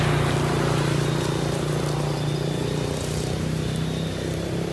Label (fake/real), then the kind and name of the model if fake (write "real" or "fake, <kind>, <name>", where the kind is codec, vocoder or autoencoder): real